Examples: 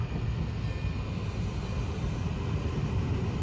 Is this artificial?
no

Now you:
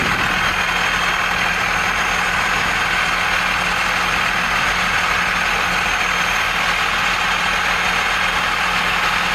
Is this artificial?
no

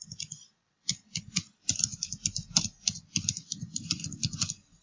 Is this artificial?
yes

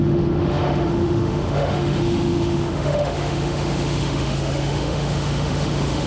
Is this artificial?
yes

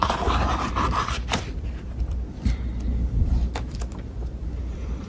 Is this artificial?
yes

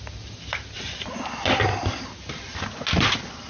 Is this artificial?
no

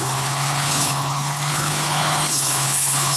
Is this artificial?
yes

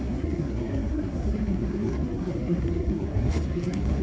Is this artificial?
yes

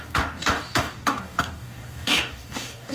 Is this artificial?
yes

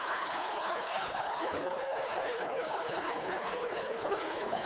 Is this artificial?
yes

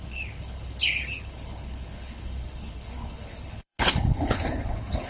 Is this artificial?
yes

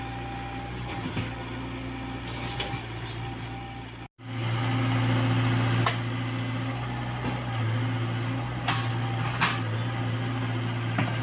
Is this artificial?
no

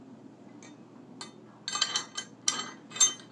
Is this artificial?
no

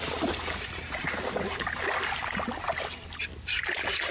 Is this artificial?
no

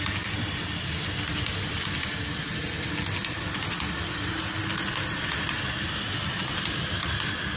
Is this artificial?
no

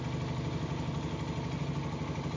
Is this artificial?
no